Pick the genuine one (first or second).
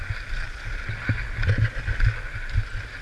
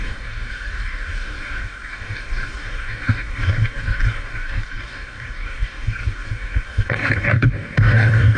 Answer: first